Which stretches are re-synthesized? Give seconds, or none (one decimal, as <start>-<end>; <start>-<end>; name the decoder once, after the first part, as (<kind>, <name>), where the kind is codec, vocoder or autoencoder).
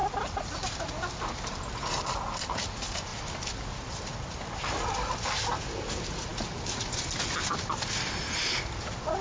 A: none